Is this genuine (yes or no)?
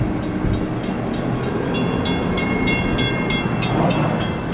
yes